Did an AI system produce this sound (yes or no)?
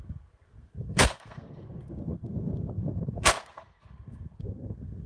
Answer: yes